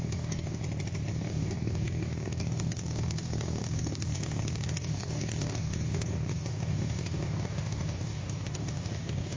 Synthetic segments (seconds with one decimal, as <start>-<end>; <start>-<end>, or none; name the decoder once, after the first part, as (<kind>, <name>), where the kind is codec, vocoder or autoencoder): 0.0-0.6 (codec, DAC); 1.1-9.4